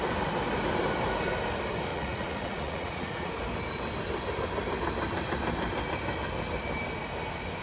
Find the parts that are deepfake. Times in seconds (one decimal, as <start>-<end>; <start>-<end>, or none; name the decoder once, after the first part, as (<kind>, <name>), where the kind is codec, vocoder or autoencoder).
1.9-3.3 (vocoder, Vocos)